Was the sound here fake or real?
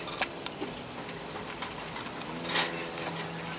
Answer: real